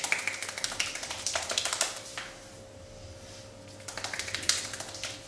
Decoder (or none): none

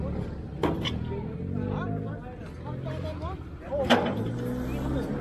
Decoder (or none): none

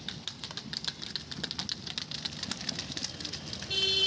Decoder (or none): none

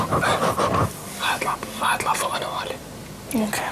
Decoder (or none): none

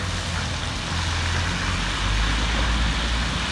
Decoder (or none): none